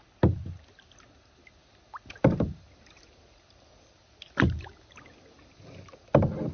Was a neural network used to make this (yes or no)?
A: no